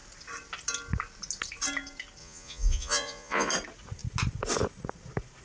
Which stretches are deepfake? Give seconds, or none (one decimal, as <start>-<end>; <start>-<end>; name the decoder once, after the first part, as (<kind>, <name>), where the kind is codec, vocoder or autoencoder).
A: 2.2-3.5 (vocoder, Vocos)